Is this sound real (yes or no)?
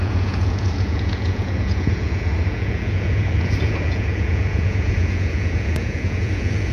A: no